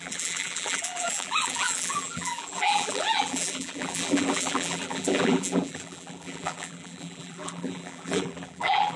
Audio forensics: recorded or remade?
remade